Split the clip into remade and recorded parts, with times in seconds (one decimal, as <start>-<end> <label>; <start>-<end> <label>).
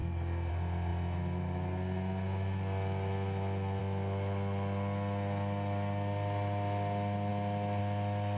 0.0-0.5 remade; 0.5-8.4 recorded